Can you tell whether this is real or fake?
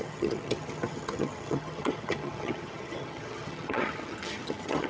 fake